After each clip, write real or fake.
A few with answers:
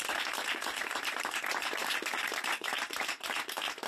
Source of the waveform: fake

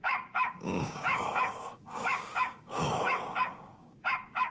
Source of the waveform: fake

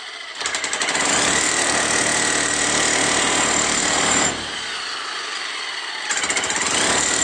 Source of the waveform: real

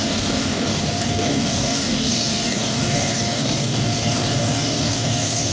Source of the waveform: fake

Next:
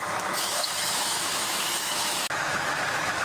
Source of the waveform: fake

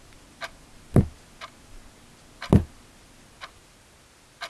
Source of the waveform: real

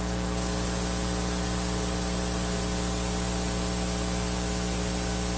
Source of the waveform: real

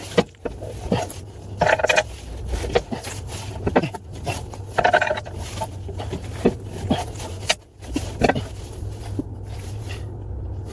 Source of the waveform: real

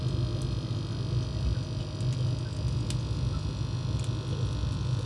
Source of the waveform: real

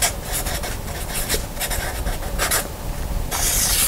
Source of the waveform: real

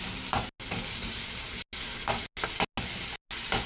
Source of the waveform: real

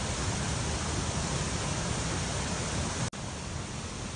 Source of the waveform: real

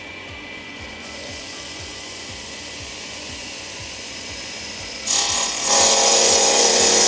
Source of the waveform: fake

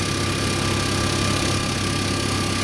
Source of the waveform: real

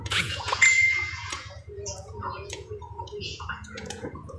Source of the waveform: fake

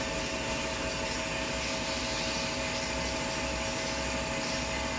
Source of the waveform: real